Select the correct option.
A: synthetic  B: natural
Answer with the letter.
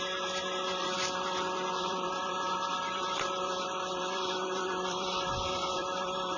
A